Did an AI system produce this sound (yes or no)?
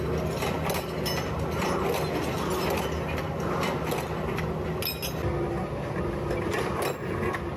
no